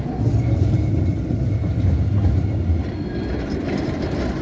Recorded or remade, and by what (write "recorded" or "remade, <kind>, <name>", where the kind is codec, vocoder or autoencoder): recorded